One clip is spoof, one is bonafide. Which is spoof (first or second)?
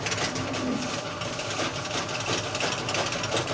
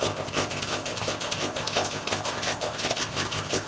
second